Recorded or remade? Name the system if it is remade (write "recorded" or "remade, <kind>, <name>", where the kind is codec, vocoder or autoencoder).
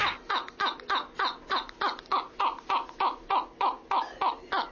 recorded